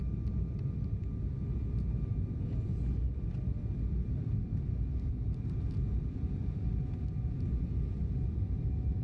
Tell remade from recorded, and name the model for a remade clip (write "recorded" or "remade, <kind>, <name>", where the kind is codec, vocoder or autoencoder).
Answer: remade, vocoder, BigVGAN v2